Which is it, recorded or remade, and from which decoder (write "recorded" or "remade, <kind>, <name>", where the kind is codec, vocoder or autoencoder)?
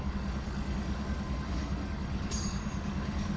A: remade, codec, DAC